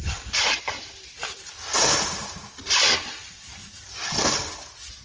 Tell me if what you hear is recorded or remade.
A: recorded